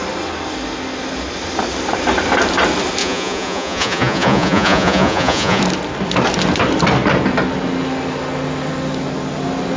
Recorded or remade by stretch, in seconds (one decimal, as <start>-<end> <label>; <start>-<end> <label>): 0.0-3.0 recorded; 3.0-5.6 remade; 5.6-9.8 recorded

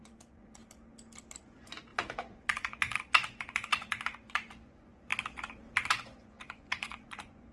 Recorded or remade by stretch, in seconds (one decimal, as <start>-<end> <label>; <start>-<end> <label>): 0.0-0.6 remade; 0.6-1.4 recorded; 1.4-5.1 remade; 5.1-5.9 recorded; 5.9-7.5 remade

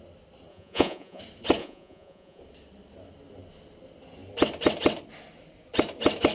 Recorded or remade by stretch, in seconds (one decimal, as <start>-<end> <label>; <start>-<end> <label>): 0.0-0.5 recorded; 0.5-1.2 remade; 1.2-1.6 recorded; 1.6-2.4 remade; 2.4-6.3 recorded

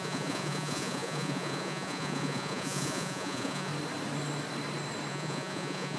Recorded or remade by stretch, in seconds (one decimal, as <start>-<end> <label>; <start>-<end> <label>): 0.0-3.7 remade; 3.7-5.1 recorded; 5.1-6.0 remade